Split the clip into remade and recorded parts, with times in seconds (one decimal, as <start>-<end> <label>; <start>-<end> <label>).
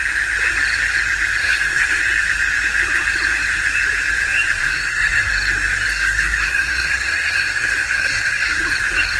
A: 0.0-1.4 recorded; 1.4-2.0 remade; 2.0-4.6 recorded; 4.6-5.3 remade; 5.3-5.9 recorded; 5.9-8.6 remade; 8.6-9.2 recorded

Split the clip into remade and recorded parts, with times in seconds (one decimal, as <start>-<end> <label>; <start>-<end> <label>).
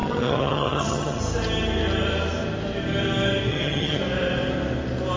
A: 0.0-1.2 remade; 1.2-3.5 recorded; 3.5-4.0 remade; 4.0-5.2 recorded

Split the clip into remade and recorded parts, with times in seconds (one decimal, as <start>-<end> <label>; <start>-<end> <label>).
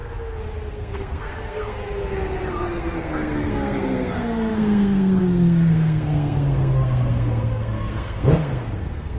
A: 0.0-0.7 recorded; 0.7-1.8 remade; 1.8-2.5 recorded; 2.5-9.2 remade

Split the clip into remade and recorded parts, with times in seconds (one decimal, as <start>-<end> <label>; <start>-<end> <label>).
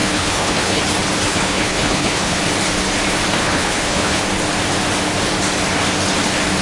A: 0.0-0.8 remade; 0.8-1.3 recorded; 1.3-2.4 remade; 2.4-3.4 recorded; 3.4-4.2 remade; 4.2-6.6 recorded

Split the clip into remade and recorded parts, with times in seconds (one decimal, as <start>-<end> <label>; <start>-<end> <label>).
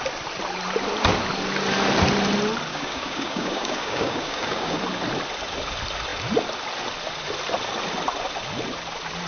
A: 0.0-2.7 recorded; 2.7-4.8 remade; 4.8-9.3 recorded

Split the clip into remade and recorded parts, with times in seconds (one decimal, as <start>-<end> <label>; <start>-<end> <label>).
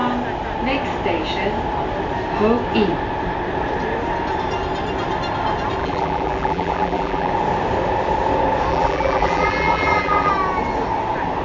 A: 0.0-5.8 recorded; 5.8-7.3 remade; 7.3-8.7 recorded; 8.7-10.3 remade; 10.3-11.4 recorded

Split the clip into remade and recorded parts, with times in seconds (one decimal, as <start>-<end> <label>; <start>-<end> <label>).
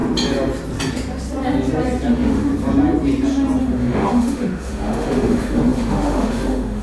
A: 0.0-2.1 recorded; 2.1-2.5 remade; 2.5-3.6 recorded; 3.6-6.8 remade